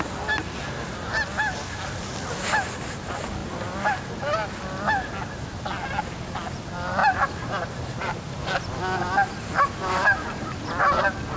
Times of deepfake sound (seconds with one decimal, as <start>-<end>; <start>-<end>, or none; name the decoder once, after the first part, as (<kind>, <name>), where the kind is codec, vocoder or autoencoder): 7.0-8.5 (vocoder, BigVGAN v2)